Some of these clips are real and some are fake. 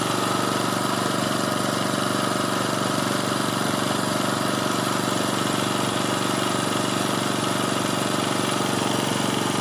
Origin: fake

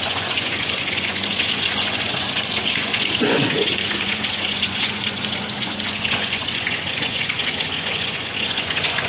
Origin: fake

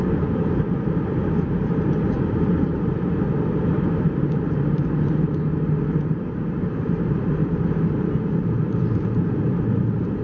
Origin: fake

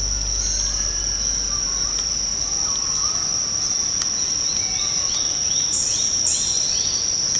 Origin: real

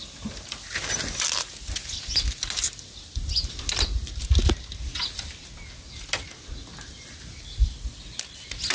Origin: real